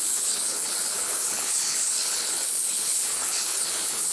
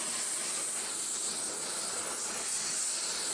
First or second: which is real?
second